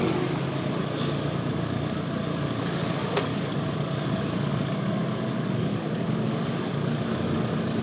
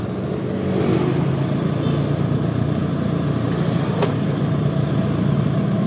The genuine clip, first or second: second